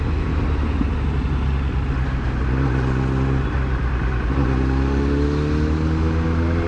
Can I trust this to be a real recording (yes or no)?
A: yes